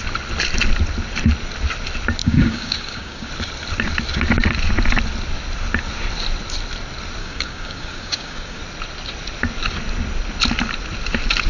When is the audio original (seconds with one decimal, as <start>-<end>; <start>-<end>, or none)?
0.0-2.2; 3.3-7.2; 8.6-11.5